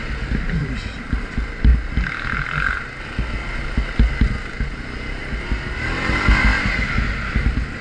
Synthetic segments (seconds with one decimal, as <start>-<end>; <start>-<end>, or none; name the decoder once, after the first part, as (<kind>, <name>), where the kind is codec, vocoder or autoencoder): none